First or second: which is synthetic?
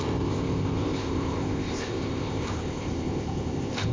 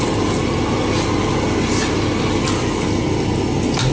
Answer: first